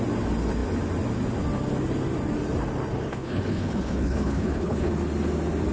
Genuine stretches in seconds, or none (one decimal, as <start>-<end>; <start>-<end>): 0.0-3.1; 4.9-5.7

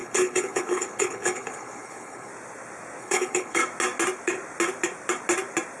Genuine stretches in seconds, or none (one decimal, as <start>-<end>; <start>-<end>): 2.3-3.0; 3.6-5.8

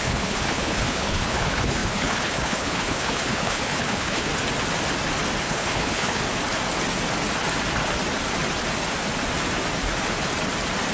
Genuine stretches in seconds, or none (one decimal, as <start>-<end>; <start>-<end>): 4.3-5.4; 6.2-10.9

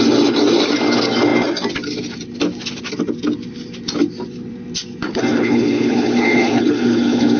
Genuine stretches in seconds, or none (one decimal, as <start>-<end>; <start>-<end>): 0.0-5.3

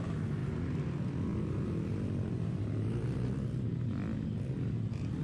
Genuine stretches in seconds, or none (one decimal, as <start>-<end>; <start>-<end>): 0.0-5.2

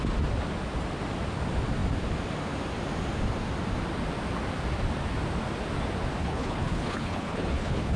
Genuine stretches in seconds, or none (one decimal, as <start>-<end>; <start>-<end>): 0.0-6.2